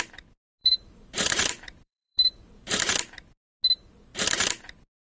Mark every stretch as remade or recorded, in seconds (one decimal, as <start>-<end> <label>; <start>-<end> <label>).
0.0-0.6 recorded; 0.6-2.8 remade; 2.8-5.0 recorded